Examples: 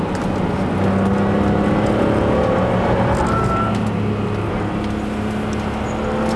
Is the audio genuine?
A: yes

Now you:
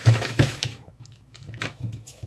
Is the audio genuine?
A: no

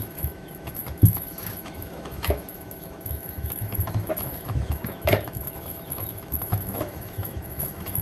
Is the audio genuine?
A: no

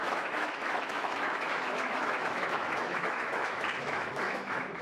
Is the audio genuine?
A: no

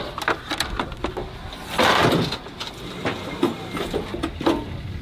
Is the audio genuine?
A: yes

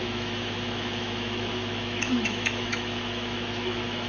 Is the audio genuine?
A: no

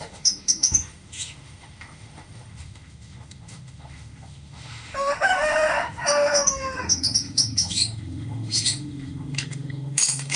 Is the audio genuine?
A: no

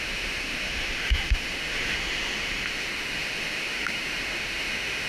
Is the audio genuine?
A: no